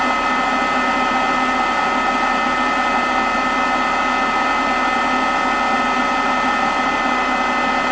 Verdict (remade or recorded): recorded